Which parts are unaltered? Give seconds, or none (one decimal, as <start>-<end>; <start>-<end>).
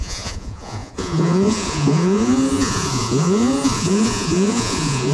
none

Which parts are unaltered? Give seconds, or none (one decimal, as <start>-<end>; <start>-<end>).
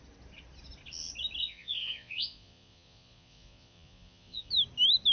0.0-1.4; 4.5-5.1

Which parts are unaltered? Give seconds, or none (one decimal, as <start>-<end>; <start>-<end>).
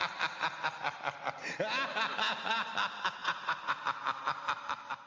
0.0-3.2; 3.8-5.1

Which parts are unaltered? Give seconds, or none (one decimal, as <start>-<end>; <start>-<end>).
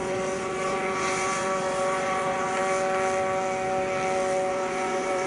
2.6-4.5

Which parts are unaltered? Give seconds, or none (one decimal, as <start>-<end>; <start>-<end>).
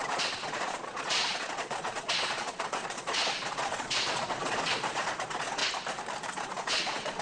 5.6-6.3